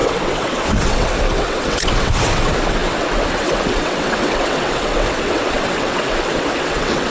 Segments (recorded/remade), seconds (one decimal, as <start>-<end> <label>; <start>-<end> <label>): 0.0-7.1 remade